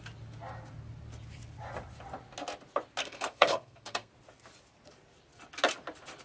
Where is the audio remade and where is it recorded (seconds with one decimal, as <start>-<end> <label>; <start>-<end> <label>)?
0.0-3.0 recorded; 3.0-4.1 remade; 4.1-6.2 recorded